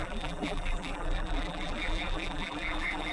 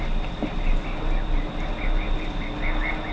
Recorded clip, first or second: second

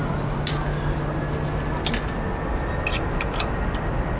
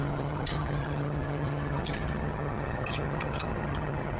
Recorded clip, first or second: first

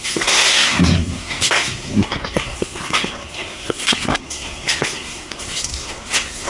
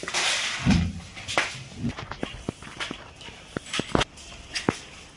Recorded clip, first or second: second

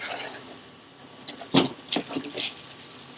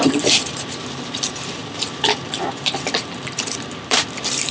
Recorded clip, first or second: first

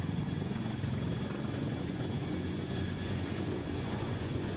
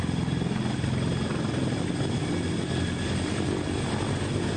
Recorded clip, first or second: second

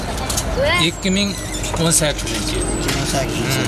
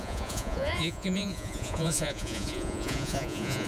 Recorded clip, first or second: first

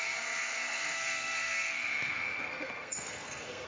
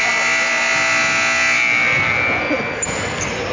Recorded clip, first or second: second